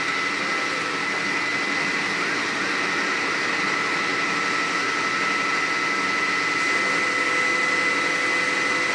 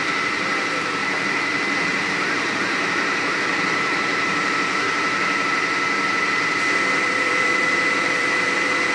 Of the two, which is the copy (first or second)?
second